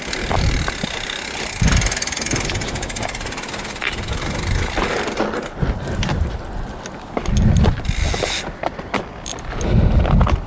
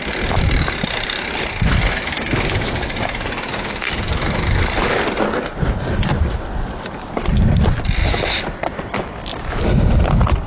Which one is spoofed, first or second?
second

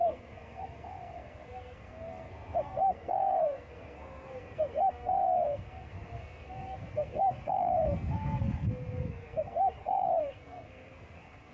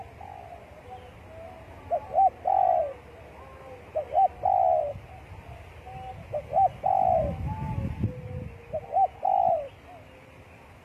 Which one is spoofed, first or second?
first